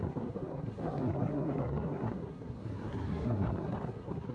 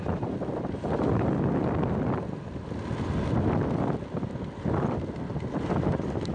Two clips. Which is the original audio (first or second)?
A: second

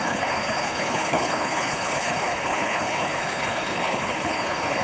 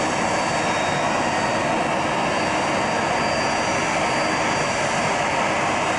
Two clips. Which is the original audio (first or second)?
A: second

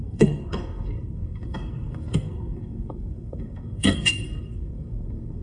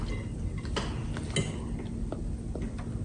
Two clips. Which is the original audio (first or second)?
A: second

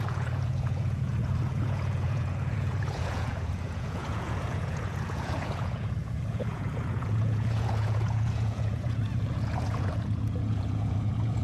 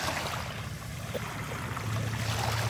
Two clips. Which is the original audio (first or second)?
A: second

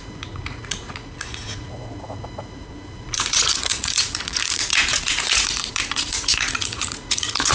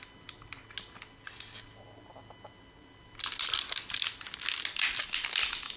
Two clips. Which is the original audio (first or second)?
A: second